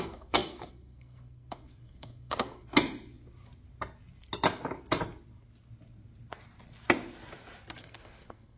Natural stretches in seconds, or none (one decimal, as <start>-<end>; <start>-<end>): 2.7-7.8